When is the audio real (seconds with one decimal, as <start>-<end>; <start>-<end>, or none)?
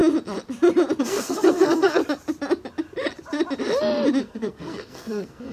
0.0-1.0; 2.0-4.2